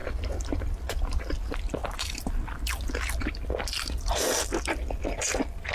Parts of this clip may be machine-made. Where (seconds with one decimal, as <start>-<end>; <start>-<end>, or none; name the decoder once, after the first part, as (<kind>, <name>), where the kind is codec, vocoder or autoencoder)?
none